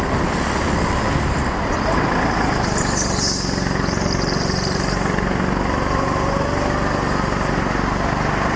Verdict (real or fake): real